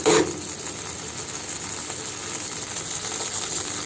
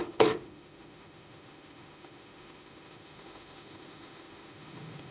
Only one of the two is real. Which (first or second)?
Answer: first